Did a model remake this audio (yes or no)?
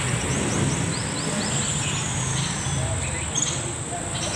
no